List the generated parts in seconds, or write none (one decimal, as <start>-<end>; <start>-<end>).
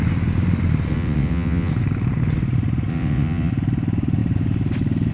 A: 0.9-1.7; 2.9-3.5